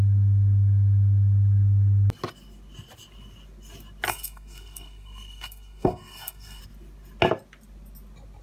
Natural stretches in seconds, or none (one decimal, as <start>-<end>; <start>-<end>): 0.0-4.1; 6.6-8.4